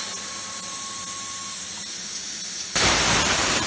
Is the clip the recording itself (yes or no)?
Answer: yes